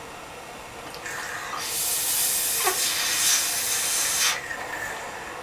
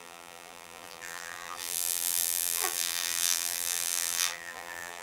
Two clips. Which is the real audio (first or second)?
first